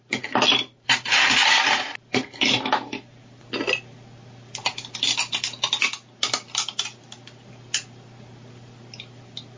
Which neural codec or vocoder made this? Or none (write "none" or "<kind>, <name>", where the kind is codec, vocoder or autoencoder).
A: none